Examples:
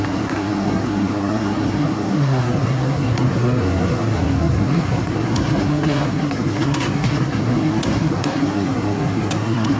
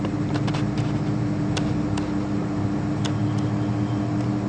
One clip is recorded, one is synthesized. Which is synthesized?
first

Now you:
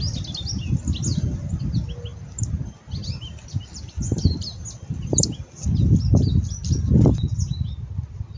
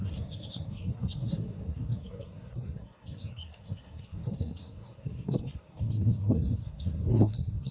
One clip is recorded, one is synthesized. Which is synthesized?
second